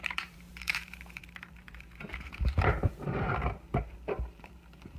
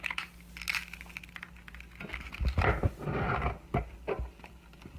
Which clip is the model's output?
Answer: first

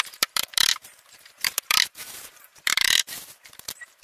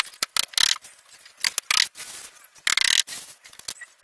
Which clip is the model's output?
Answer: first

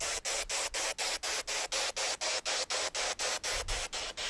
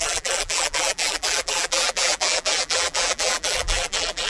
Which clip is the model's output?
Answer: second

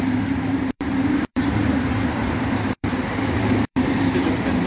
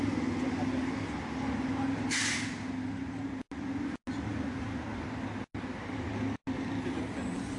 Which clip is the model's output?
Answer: first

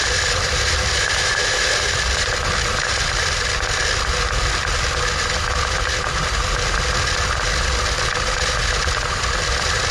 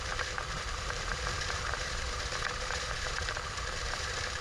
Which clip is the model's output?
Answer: second